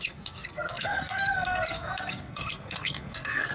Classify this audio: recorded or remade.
remade